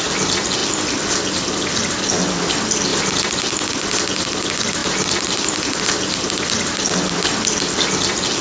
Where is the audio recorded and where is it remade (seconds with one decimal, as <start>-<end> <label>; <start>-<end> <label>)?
0.0-4.8 recorded; 4.8-5.8 remade; 5.8-8.4 recorded